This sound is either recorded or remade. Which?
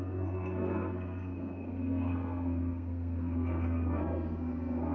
remade